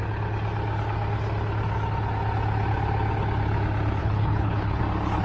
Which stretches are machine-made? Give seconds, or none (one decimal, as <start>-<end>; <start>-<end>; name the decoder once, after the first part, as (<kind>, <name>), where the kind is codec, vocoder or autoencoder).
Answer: 4.0-4.8 (codec, HILCodec)